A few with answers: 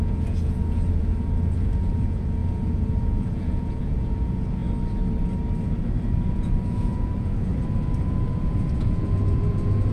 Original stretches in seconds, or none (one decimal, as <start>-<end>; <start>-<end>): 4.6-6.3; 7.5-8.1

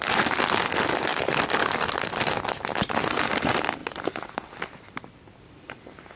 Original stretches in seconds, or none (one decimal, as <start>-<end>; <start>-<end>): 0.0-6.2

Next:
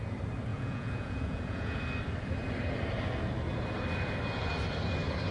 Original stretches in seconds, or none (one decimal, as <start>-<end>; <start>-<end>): 0.0-0.5; 1.8-5.3

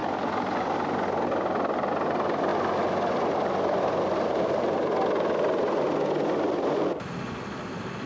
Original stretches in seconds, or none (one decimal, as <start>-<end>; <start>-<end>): 0.0-8.1

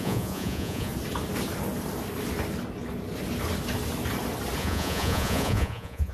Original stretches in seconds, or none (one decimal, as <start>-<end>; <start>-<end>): 0.9-4.6

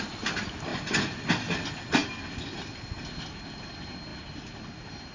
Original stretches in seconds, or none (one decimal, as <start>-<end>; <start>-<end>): 0.0-0.7; 1.2-5.1

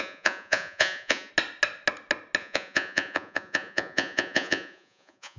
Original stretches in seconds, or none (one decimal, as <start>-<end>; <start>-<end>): 1.3-2.4

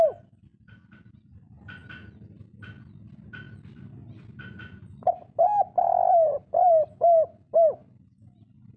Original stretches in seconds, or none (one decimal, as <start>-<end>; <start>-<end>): 0.0-8.8